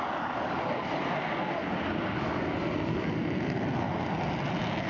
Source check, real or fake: real